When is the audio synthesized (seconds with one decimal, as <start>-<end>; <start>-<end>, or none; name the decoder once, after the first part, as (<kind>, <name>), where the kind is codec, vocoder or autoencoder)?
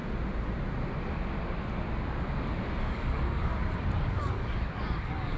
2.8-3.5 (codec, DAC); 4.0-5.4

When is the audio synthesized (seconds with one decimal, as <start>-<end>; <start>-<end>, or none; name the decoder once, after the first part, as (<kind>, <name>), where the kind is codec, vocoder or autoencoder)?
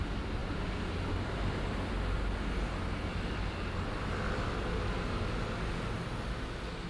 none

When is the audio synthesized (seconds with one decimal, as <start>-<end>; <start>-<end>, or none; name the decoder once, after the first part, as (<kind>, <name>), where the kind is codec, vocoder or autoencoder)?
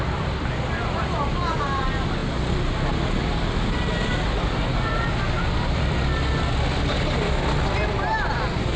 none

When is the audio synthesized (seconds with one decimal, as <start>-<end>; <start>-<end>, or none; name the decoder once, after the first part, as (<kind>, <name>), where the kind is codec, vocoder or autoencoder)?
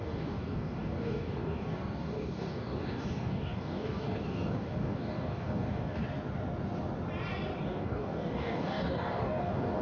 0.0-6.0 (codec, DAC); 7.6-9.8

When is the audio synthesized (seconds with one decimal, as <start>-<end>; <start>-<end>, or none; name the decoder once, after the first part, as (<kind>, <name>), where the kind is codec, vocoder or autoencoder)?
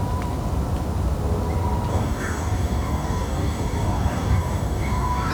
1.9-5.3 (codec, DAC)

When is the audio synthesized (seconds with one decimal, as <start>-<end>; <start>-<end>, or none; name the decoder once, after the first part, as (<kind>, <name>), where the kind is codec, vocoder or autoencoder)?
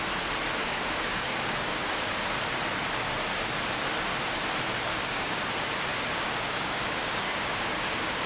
0.6-1.9 (codec, DAC); 4.9-5.4; 5.9-8.3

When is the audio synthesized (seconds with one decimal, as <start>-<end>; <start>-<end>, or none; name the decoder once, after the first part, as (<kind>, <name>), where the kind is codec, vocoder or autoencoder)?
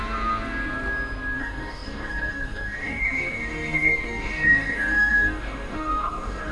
1.4-6.5 (codec, DAC)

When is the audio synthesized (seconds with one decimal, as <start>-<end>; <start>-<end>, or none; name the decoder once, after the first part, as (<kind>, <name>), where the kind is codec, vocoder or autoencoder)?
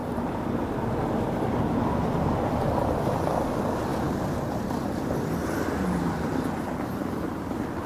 none